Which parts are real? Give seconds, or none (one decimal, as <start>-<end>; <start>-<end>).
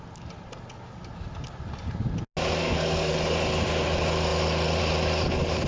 0.0-2.6; 3.1-5.7